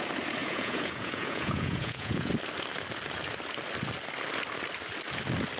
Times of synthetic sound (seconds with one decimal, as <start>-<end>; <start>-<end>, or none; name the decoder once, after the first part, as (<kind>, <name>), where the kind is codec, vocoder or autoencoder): 0.4-2.3 (vocoder, Vocos)